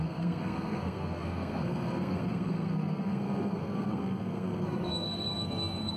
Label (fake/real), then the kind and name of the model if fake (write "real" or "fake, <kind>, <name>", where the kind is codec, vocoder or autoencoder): fake, codec, SNAC